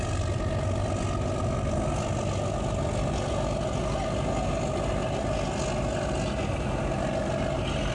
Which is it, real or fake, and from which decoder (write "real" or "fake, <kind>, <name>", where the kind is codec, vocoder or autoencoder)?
real